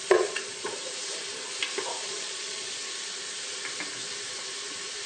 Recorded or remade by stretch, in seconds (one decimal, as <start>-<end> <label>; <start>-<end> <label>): 0.0-0.7 remade; 0.7-2.0 recorded; 2.0-2.7 remade; 2.7-5.1 recorded